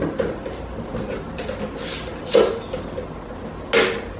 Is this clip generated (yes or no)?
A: no